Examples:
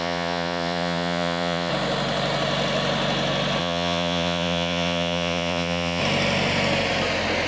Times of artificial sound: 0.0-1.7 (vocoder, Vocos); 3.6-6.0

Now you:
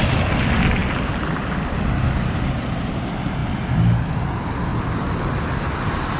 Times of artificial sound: none